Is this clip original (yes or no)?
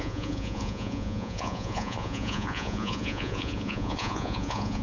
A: no